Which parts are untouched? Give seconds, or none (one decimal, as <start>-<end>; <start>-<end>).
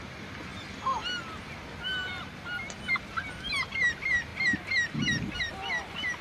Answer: 0.0-6.2